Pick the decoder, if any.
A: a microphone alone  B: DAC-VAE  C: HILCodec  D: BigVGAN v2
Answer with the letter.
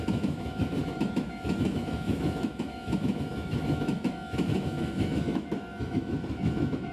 B